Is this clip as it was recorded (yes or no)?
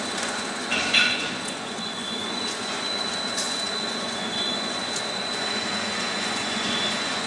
no